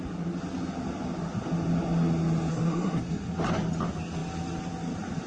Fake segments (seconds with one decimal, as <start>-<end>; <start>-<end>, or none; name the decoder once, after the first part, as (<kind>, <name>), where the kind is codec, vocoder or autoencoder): 2.5-3.3 (codec, SNAC)